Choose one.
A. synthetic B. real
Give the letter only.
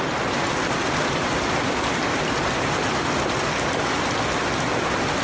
B